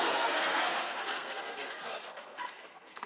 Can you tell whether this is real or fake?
fake